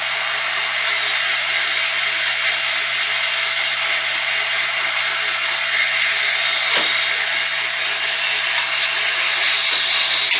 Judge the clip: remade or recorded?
recorded